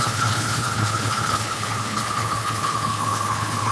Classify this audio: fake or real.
fake